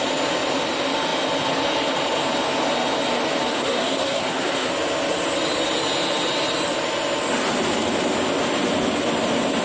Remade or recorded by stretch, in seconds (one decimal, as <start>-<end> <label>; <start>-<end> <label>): 0.0-3.5 recorded; 3.5-4.7 remade; 4.7-9.6 recorded